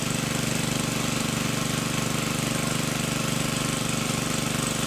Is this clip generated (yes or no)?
no